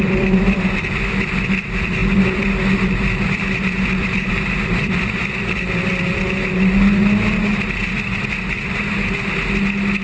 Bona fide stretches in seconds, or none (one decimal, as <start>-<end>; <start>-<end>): 7.0-10.0